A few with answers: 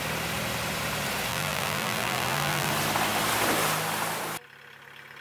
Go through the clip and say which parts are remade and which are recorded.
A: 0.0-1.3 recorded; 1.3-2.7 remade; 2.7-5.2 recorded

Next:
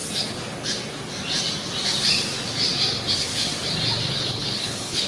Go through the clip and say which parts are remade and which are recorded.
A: 0.0-3.1 recorded; 3.1-3.5 remade; 3.5-4.1 recorded; 4.1-5.1 remade